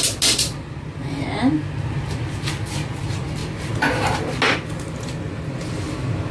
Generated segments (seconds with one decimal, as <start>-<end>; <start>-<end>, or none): none